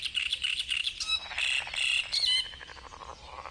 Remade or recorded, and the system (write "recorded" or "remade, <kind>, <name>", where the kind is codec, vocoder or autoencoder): recorded